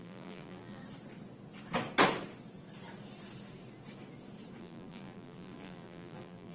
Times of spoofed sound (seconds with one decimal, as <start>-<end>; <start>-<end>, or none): 0.0-0.8; 4.6-6.5